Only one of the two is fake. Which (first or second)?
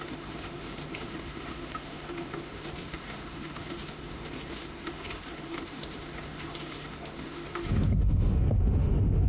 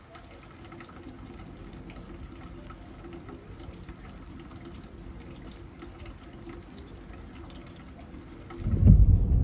first